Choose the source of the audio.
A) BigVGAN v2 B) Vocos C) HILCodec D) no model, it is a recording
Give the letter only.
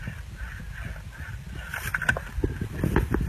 D